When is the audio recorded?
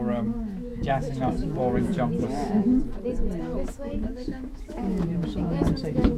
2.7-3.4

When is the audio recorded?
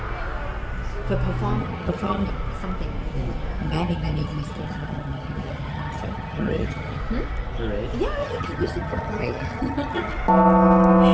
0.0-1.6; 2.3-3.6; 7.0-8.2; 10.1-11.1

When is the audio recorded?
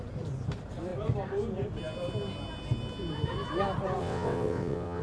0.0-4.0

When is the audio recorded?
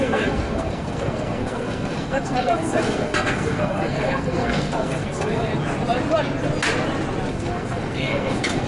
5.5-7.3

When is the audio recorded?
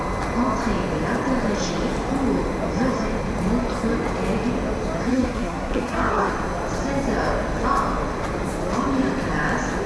0.0-5.1; 6.3-9.9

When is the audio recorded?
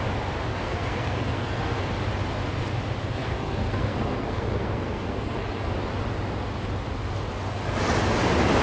0.0-0.5; 1.9-3.2; 5.7-8.6